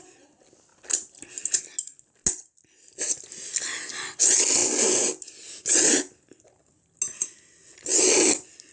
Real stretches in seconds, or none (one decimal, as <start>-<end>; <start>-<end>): 0.0-8.7